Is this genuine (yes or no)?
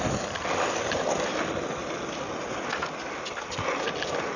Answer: yes